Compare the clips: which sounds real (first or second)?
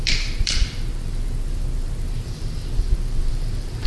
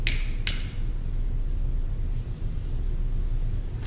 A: second